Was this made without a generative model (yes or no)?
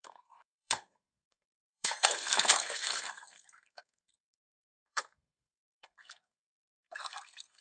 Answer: no